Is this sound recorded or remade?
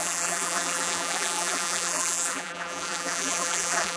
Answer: remade